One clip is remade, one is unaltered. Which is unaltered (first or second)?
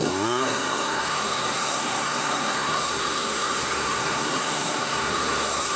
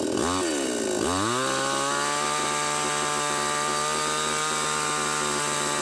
second